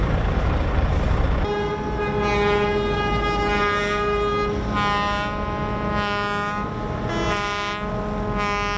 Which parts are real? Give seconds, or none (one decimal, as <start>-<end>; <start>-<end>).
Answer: 1.2-8.8